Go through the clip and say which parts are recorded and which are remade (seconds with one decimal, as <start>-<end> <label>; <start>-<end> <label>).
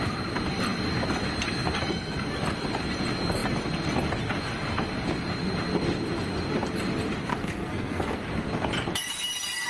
0.0-7.3 recorded; 7.3-8.2 remade; 8.2-9.7 recorded